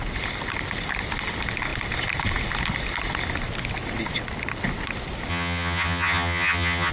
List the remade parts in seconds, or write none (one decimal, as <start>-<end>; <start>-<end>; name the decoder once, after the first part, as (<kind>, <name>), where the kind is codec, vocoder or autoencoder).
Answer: 5.3-6.9 (vocoder, HiFi-GAN)